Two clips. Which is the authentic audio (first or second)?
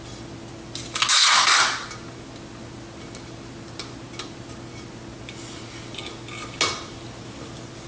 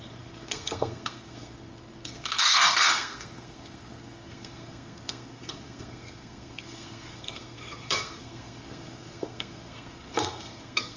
first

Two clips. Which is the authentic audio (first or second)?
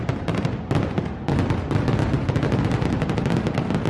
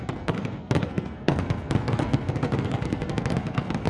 first